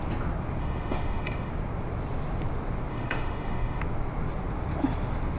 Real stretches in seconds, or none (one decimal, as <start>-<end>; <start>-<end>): 0.0-0.6; 1.5-2.9; 3.8-5.4